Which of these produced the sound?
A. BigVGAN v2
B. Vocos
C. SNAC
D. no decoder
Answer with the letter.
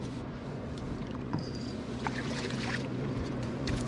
B